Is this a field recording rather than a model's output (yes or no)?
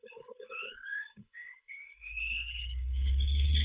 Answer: no